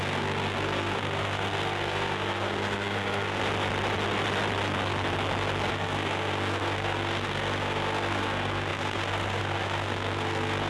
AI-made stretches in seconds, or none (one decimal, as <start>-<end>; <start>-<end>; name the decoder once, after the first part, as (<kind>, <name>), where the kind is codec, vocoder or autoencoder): 0.0-3.4 (codec, SNAC); 5.7-10.7